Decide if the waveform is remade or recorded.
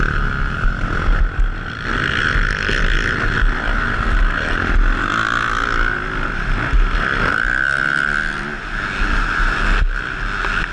recorded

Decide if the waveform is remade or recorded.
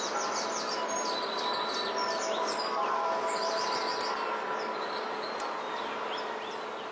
recorded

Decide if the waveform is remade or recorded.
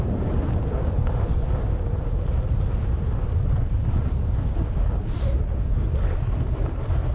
recorded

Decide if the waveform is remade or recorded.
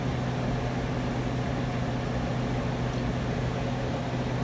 recorded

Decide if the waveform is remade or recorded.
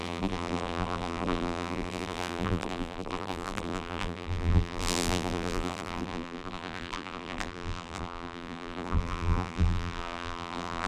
remade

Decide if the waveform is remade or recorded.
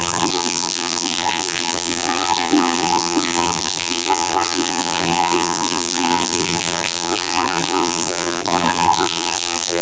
remade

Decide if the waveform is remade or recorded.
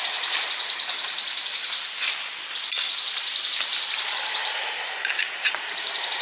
remade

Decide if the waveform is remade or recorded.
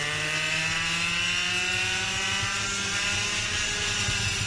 recorded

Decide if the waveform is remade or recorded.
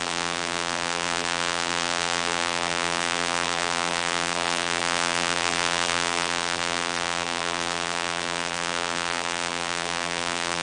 remade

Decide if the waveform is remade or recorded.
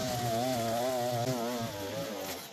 recorded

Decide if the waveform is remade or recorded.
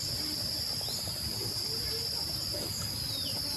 recorded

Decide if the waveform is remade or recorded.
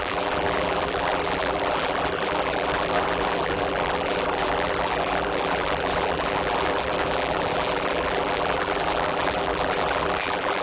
remade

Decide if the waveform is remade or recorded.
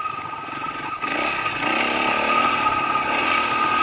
recorded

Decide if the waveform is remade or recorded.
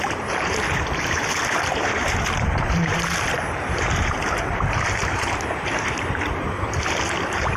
remade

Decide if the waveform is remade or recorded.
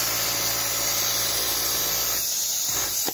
recorded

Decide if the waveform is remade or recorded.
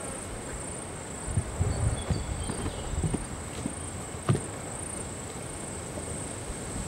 recorded